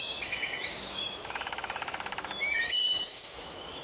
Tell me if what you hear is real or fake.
fake